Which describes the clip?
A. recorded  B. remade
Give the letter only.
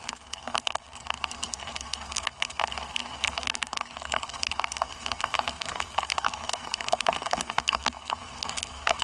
B